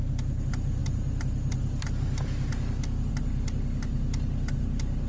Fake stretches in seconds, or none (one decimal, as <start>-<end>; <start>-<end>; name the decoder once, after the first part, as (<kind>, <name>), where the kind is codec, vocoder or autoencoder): none